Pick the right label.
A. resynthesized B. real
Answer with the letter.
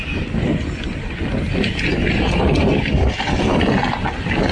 B